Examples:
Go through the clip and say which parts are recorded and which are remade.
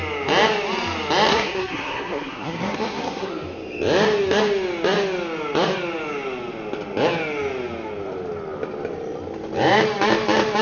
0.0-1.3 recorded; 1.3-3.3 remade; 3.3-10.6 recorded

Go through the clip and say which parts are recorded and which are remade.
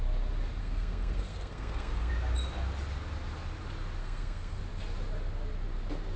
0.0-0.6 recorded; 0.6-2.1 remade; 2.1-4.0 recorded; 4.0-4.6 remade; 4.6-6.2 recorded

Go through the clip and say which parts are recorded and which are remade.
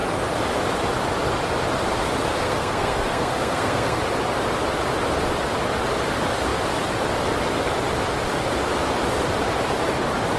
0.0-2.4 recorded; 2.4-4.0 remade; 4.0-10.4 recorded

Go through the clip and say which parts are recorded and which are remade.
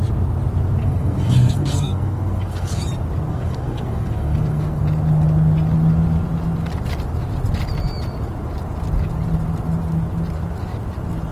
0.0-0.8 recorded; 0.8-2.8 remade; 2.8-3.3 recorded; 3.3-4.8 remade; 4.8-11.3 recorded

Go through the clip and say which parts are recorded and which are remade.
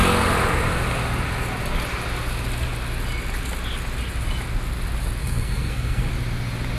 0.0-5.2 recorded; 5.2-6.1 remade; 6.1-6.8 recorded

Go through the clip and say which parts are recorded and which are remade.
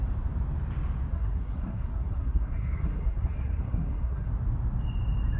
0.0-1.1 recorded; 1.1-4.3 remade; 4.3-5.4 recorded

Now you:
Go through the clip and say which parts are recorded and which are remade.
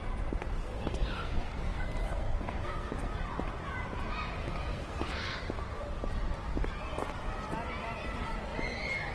0.0-0.6 recorded; 0.6-3.1 remade; 3.1-4.4 recorded; 4.4-5.5 remade; 5.5-9.1 recorded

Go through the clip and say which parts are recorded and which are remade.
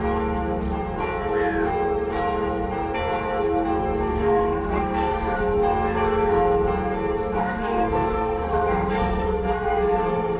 0.0-4.1 recorded; 4.1-5.4 remade; 5.4-7.4 recorded; 7.4-10.4 remade